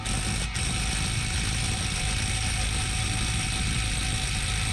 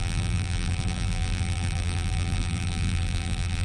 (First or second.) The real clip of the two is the first